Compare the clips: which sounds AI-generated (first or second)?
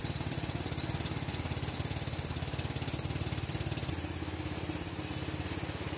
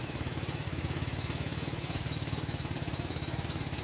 second